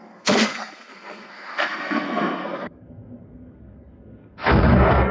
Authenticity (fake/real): fake